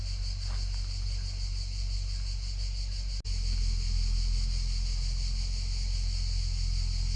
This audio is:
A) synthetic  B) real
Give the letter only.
B